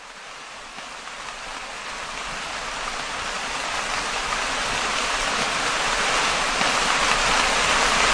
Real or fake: real